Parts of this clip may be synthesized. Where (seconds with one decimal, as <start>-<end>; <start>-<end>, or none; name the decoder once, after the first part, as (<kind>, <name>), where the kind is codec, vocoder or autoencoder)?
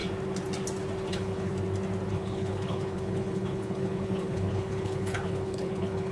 1.1-1.5 (codec, HILCodec); 2.1-6.1